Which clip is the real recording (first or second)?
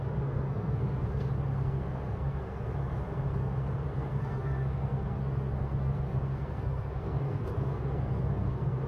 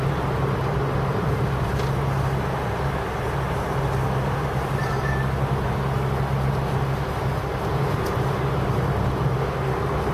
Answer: second